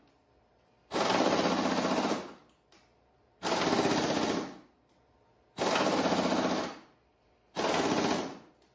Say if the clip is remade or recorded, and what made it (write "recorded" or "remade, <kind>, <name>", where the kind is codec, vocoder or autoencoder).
recorded